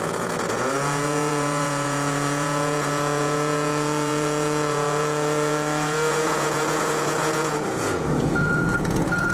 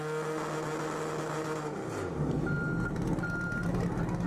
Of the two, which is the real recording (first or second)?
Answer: second